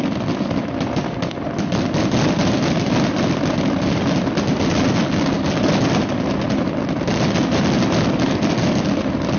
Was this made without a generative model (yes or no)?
yes